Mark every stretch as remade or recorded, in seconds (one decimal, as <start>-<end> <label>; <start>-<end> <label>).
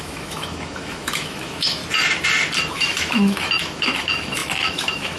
0.0-1.8 remade; 1.8-2.7 recorded; 2.7-5.2 remade